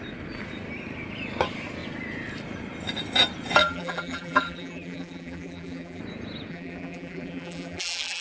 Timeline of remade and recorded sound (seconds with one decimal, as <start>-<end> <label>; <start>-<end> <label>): 0.0-3.6 recorded; 3.6-6.0 remade; 6.0-6.5 recorded; 6.5-8.2 remade